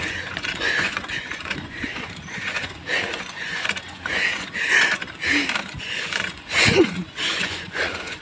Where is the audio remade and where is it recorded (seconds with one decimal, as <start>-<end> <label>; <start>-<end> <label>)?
0.0-5.0 remade; 5.0-5.6 recorded; 5.6-8.2 remade